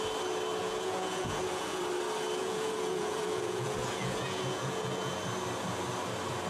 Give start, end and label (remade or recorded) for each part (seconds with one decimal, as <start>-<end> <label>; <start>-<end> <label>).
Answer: 0.0-0.6 recorded; 0.6-1.8 remade; 1.8-2.4 recorded; 2.4-5.1 remade; 5.1-6.5 recorded